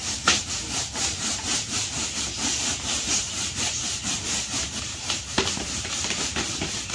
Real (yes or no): no